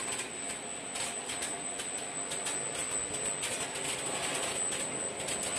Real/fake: real